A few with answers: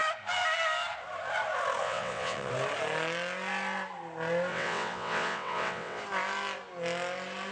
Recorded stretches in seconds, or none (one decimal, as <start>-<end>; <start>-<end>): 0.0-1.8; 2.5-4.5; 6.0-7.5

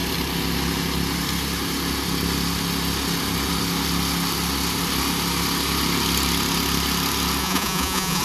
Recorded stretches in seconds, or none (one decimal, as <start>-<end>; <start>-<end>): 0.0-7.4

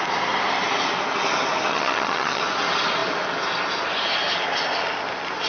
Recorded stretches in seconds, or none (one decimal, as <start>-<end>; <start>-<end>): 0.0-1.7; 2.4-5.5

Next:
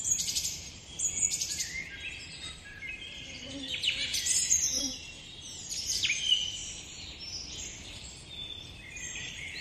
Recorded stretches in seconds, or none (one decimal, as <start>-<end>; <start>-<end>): 4.1-4.8; 6.6-9.1

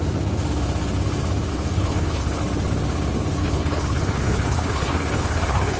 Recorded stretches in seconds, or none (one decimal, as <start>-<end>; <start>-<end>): 0.0-1.5; 2.4-3.4